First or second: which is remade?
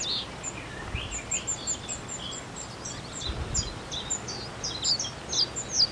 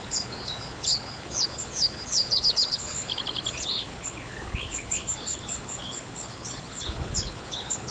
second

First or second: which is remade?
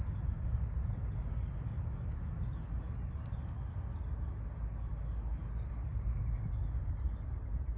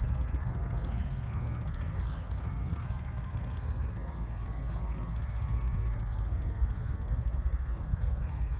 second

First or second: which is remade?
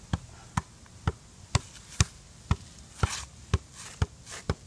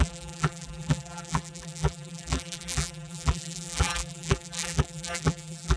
second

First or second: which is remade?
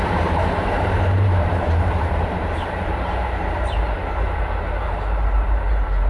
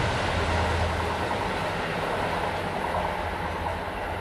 first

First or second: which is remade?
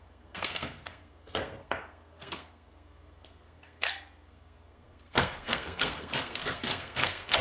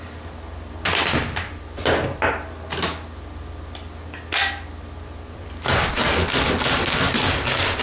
first